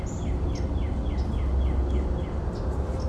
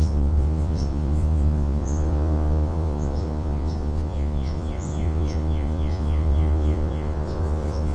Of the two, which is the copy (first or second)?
second